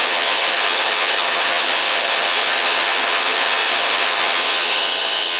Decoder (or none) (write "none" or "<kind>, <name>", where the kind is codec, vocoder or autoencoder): vocoder, HiFi-GAN